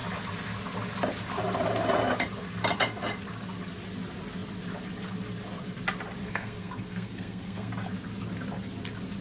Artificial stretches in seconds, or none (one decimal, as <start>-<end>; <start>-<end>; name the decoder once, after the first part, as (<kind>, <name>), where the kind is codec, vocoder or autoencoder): 6.2-7.7 (codec, SNAC)